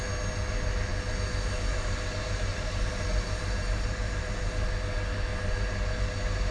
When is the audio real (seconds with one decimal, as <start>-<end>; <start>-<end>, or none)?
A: 0.0-2.5; 4.5-6.5